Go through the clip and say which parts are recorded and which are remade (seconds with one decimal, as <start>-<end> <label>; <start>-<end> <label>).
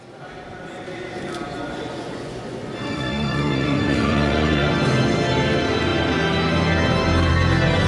0.0-1.5 recorded; 1.5-4.7 remade; 4.7-7.9 recorded